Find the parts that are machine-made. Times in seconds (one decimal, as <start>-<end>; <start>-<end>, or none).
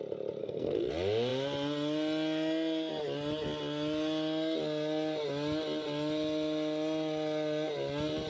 0.4-0.9